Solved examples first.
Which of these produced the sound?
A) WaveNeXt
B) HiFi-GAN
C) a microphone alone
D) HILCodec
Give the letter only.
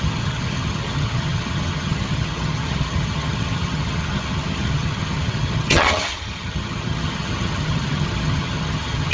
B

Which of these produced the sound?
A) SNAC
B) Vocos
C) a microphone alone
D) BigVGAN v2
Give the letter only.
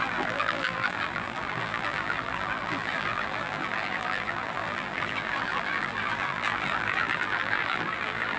D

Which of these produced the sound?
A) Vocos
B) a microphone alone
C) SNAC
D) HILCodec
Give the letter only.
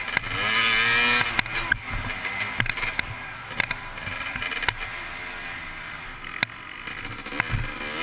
B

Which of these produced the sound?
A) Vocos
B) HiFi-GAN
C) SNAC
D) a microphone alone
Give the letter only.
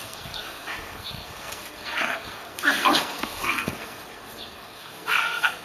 C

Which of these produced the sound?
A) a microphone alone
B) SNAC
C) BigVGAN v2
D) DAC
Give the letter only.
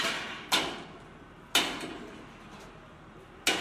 A